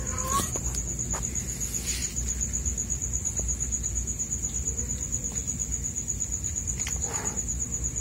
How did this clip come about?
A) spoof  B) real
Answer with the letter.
B